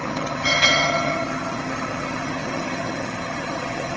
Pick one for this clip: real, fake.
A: fake